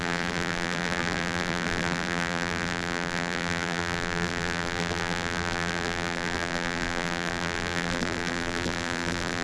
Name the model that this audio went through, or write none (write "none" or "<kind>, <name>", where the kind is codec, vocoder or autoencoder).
vocoder, BigVGAN v2